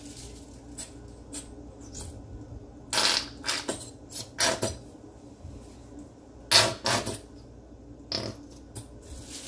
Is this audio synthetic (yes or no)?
no